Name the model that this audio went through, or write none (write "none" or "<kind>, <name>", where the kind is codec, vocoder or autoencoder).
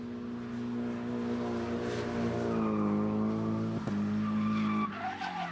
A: none